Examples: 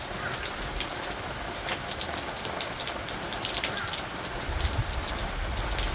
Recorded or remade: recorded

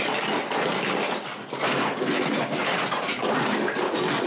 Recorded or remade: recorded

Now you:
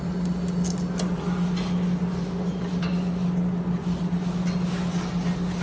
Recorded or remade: recorded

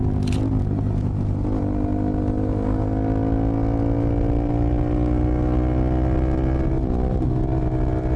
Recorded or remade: recorded